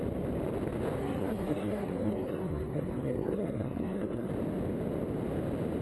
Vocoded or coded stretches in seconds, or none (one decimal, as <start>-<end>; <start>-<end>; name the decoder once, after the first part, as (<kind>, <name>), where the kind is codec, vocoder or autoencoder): 1.0-4.3 (codec, SNAC)

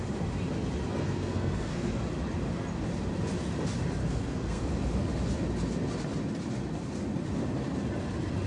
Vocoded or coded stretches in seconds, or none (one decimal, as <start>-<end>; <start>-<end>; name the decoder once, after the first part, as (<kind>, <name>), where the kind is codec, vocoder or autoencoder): 1.0-1.9 (codec, SNAC); 4.0-4.6

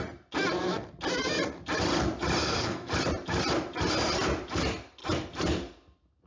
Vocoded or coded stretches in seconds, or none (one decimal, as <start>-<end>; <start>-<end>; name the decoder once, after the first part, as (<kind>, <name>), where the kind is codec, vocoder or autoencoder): 2.4-2.9 (codec, SNAC)